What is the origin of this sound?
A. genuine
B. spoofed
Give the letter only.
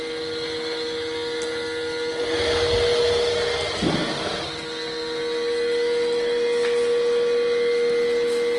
A